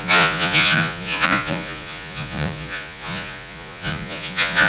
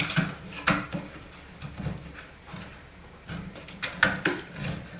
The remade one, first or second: first